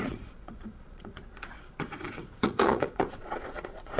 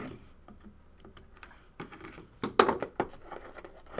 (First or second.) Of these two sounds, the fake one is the first